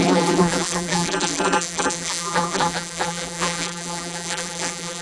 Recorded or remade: remade